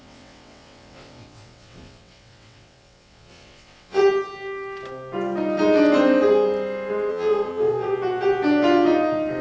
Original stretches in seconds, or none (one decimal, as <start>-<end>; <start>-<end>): 4.0-7.1; 7.9-9.4